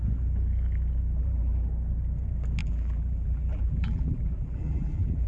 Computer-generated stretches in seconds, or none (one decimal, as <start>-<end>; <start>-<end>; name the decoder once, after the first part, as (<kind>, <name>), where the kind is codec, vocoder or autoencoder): 1.2-1.7 (vocoder, BigVGAN v2); 2.6-5.3